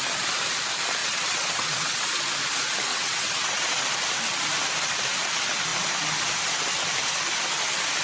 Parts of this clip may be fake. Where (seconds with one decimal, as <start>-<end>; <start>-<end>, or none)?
1.0-2.0; 2.9-3.8